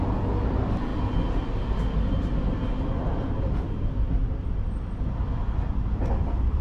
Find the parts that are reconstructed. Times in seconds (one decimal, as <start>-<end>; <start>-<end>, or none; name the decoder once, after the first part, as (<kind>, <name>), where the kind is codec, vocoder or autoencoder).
none